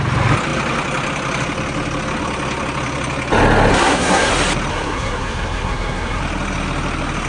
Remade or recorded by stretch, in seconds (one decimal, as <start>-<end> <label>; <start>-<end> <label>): 0.0-3.7 recorded; 3.7-4.3 remade; 4.3-4.7 recorded; 4.7-6.2 remade; 6.2-7.3 recorded